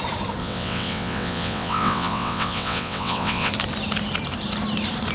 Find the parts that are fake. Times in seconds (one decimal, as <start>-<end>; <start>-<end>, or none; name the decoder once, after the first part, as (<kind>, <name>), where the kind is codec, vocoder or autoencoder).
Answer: 0.4-3.5 (vocoder, WaveNeXt)